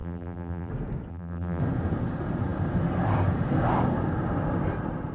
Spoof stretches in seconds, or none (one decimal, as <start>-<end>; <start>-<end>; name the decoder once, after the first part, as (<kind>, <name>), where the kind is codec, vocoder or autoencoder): 0.0-0.7 (vocoder, BigVGAN v2); 1.1-1.6